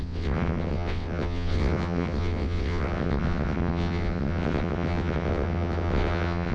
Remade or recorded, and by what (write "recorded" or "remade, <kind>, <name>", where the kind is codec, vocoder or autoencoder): remade, vocoder, WaveNeXt